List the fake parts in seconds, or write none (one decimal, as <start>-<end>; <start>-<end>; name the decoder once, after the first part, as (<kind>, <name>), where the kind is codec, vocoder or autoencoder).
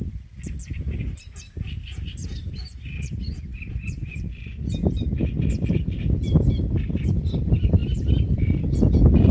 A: 2.2-2.8 (vocoder, BigVGAN v2); 3.5-6.9; 7.8-8.6